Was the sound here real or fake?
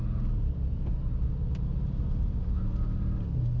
real